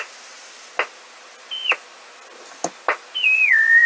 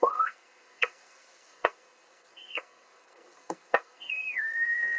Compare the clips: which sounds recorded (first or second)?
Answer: first